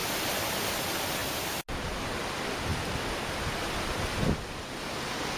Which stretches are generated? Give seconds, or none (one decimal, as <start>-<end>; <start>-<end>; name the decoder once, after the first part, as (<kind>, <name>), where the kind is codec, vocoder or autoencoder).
none